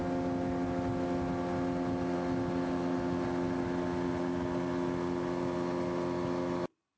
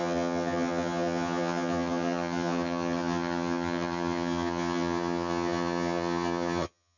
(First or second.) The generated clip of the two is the second